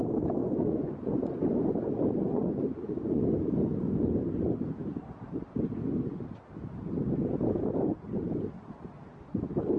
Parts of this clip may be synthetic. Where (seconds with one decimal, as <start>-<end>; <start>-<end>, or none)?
0.4-1.1; 2.2-3.2